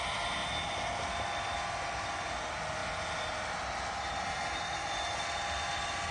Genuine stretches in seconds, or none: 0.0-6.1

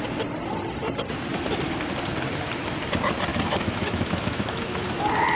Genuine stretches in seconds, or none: 0.0-3.3; 5.0-5.4

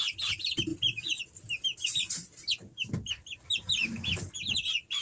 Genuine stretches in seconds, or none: 0.0-5.0

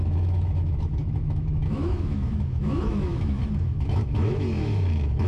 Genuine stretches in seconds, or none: none

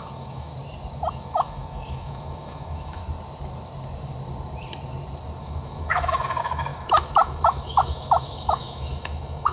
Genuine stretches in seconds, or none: 0.5-1.1; 3.0-5.4